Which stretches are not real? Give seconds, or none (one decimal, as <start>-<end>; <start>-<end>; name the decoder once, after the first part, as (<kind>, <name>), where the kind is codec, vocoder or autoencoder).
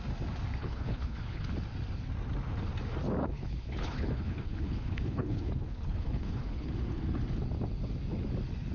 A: 0.6-1.5 (codec, HILCodec); 3.2-6.7